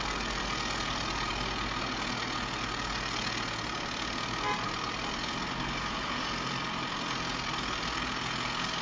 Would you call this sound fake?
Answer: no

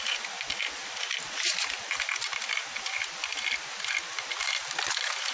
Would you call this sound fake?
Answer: no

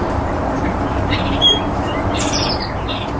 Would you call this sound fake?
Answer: yes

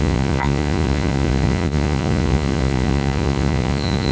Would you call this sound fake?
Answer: yes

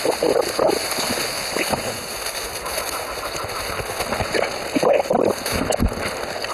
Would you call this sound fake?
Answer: no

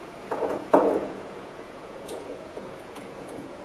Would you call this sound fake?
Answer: yes